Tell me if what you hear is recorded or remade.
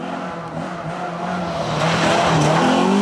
recorded